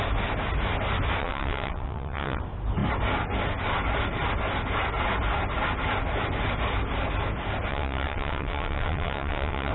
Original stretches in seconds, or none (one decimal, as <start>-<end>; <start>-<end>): 0.0-1.2; 2.4-7.7